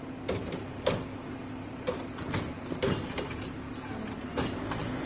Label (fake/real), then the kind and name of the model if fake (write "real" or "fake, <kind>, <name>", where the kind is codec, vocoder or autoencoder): real